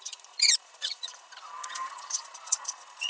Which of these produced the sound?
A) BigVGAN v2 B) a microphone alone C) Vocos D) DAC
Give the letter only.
C